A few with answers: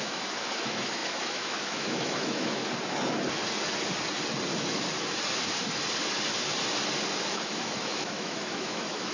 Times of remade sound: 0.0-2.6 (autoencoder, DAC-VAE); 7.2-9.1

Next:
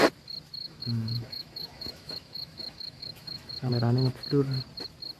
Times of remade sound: 0.6-3.7 (autoencoder, DAC-VAE)

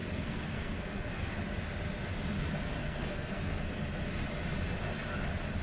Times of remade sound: 0.0-1.3 (codec, SNAC); 2.8-3.6

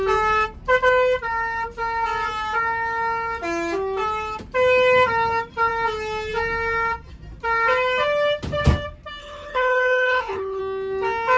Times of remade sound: 9.2-10.6 (codec, HILCodec)